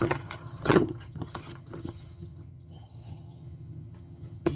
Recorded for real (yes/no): no